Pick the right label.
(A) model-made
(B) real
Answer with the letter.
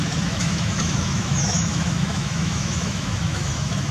A